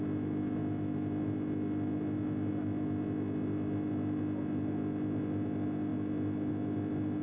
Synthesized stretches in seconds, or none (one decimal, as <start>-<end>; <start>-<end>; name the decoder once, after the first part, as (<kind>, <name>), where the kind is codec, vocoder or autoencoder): none